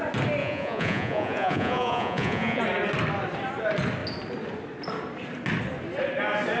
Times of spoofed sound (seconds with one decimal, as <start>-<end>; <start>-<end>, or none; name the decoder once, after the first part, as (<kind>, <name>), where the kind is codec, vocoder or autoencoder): 0.4-2.6 (vocoder, Vocos)